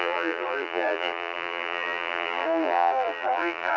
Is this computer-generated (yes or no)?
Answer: yes